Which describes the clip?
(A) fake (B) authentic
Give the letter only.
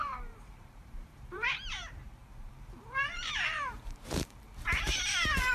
A